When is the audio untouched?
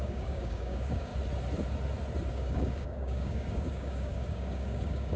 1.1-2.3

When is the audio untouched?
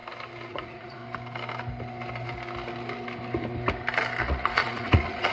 0.0-0.5; 1.0-4.2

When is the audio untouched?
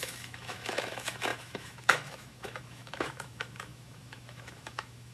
none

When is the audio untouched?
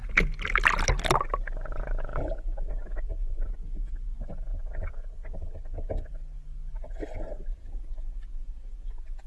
1.0-9.3